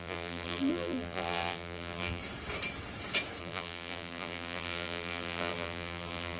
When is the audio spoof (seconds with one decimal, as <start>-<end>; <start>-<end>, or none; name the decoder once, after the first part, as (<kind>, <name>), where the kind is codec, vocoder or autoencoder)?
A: 0.0-2.2 (vocoder, BigVGAN v2); 3.4-6.4